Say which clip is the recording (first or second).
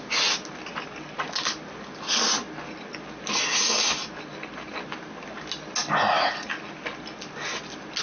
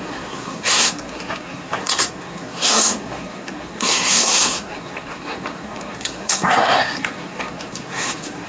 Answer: first